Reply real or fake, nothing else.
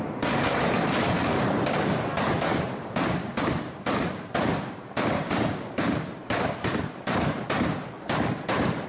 fake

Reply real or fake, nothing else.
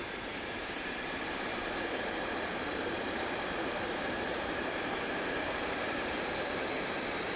fake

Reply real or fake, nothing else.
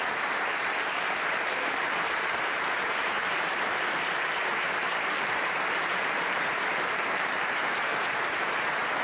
fake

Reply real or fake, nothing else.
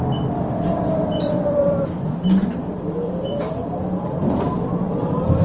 fake